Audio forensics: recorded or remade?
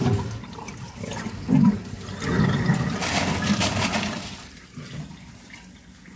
recorded